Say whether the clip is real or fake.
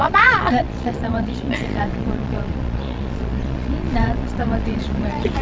fake